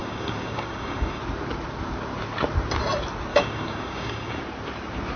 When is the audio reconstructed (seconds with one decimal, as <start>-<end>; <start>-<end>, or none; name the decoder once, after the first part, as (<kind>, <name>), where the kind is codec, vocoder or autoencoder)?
0.0-1.2 (codec, DAC); 3.3-4.4